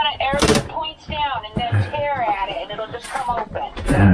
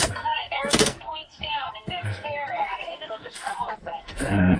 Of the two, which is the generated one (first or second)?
second